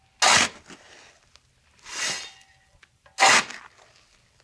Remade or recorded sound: recorded